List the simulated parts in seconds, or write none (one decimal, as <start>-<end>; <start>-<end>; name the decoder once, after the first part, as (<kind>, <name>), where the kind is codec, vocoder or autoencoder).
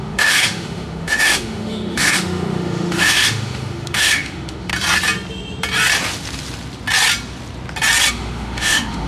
0.0-4.7 (autoencoder, DAC-VAE); 8.1-9.1